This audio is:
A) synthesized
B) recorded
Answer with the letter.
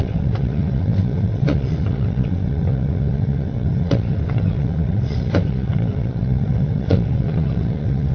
A